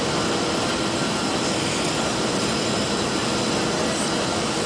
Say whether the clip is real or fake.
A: real